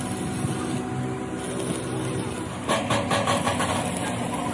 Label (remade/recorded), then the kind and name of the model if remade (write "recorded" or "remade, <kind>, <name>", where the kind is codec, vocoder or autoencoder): recorded